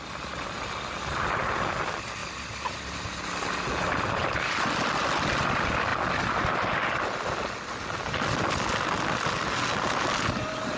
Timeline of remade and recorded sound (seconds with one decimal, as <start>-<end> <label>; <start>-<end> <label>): 0.0-10.8 recorded